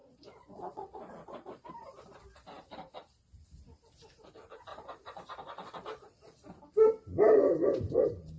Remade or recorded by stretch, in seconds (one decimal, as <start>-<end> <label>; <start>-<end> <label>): 0.0-1.7 remade; 1.7-4.7 recorded; 4.7-6.5 remade; 6.5-8.4 recorded